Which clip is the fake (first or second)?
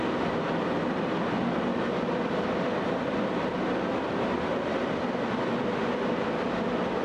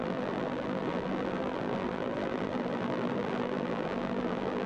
second